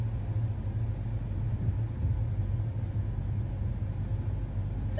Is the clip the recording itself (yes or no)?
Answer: yes